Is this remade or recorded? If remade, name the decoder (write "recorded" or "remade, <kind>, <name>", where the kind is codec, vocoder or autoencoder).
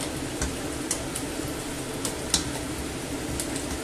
recorded